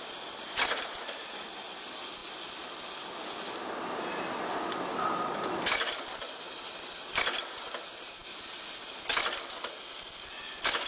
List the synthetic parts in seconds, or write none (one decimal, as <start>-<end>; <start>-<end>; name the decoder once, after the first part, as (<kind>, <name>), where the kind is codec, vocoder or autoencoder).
none

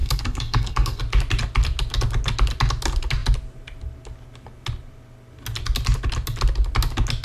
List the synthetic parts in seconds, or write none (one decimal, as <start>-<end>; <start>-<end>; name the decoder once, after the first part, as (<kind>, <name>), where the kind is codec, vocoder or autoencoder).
0.0-1.0 (codec, SNAC)

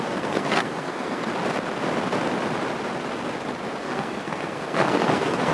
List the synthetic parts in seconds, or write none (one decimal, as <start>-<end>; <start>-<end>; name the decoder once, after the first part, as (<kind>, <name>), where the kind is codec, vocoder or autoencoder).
0.0-1.3 (codec, SNAC); 3.8-5.5

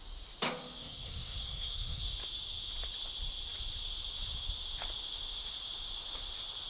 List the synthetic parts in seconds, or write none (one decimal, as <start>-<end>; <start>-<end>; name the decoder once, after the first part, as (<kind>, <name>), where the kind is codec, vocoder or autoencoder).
0.8-2.0 (codec, SNAC)

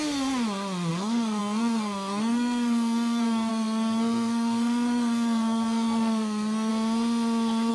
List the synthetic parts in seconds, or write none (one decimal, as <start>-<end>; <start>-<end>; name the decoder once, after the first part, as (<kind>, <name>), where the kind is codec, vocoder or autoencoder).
0.9-6.7 (codec, SNAC)

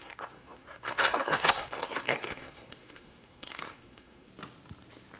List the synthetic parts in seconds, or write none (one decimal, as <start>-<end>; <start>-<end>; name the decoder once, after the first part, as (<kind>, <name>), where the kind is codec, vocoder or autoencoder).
0.0-4.3 (codec, SNAC)

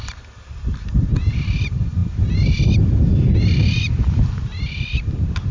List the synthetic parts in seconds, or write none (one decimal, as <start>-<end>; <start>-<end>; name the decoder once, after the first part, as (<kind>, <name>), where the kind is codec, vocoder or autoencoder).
none